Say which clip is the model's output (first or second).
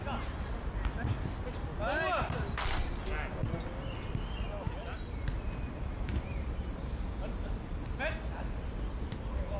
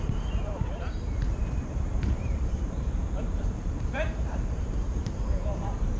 second